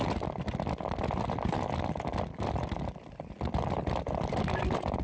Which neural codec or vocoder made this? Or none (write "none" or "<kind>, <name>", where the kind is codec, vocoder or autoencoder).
none